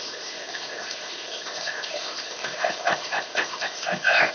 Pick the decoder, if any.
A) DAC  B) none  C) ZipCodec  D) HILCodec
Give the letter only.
C